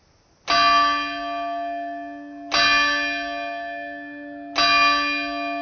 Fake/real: real